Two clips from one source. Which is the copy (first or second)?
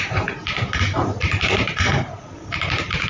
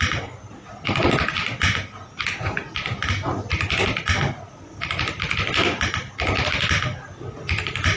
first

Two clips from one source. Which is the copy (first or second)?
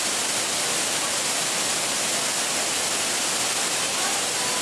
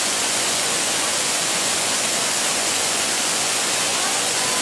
second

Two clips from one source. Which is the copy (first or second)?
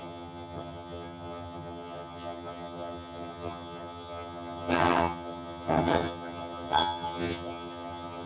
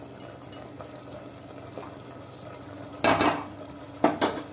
first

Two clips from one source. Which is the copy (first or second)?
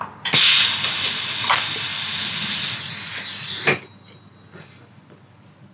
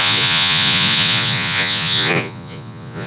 second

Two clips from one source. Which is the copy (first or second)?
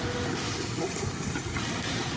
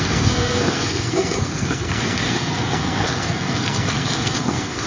second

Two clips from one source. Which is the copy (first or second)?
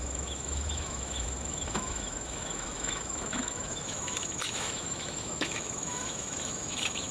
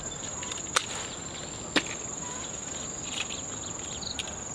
first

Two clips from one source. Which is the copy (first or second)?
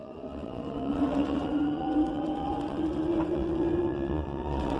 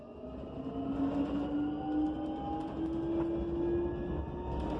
first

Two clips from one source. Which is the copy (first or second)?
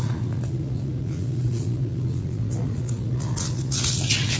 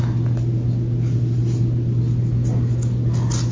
first